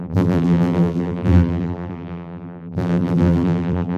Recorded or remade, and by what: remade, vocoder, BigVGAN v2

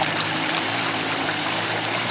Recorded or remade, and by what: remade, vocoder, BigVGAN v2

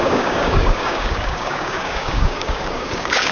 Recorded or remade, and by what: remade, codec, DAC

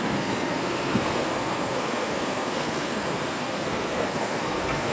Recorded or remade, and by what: remade, codec, SNAC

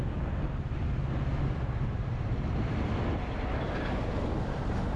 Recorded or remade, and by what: recorded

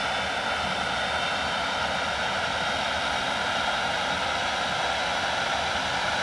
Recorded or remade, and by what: recorded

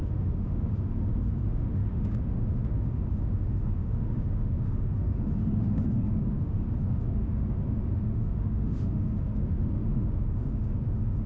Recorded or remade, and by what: remade, autoencoder, DAC-VAE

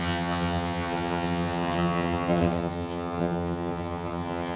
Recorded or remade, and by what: remade, vocoder, HiFi-GAN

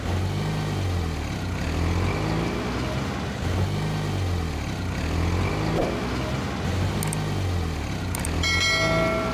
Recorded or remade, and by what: recorded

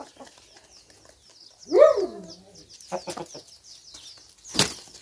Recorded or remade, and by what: recorded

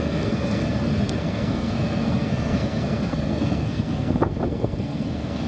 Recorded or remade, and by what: remade, codec, SNAC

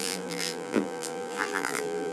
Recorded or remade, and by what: remade, vocoder, BigVGAN v2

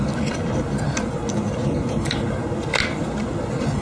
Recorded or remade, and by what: recorded